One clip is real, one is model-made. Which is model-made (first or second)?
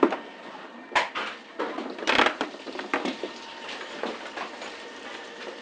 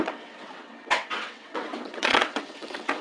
second